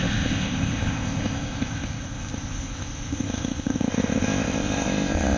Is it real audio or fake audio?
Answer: fake